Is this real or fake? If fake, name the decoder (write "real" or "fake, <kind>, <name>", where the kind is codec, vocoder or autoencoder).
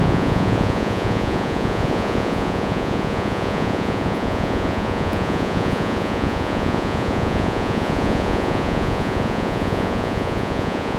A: fake, vocoder, Vocos